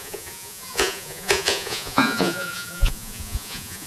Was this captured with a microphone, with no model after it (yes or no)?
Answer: no